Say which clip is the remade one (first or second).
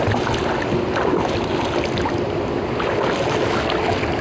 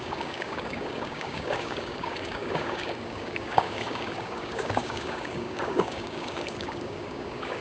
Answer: second